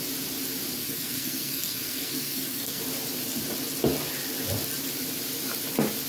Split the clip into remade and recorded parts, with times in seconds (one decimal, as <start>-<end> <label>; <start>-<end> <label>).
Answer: 0.0-0.8 recorded; 0.8-2.8 remade; 2.8-6.1 recorded